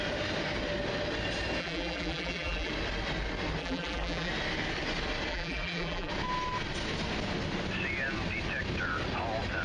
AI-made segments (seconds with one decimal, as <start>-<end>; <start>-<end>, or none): 1.6-2.7; 3.6-4.3; 5.3-6.1